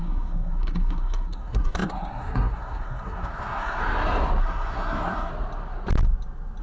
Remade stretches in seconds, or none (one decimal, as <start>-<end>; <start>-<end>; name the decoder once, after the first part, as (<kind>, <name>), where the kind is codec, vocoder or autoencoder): 0.0-3.8 (codec, SNAC); 4.4-5.3